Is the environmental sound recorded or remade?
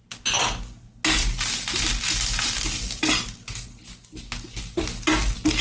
recorded